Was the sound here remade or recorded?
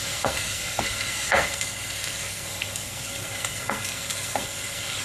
remade